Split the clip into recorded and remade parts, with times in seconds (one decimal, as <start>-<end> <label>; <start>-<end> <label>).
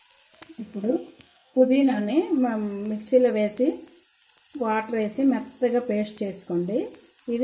0.0-0.6 recorded; 0.6-2.1 remade; 2.1-7.4 recorded